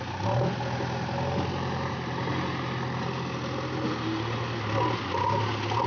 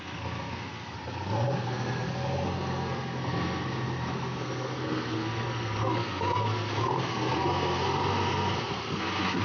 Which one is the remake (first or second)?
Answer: second